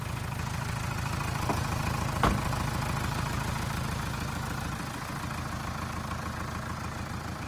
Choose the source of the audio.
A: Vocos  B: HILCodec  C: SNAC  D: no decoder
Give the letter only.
D